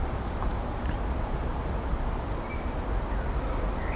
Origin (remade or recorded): recorded